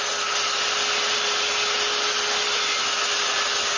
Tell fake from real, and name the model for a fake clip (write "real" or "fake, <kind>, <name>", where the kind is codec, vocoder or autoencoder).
real